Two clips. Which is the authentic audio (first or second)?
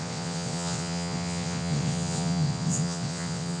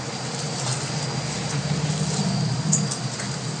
second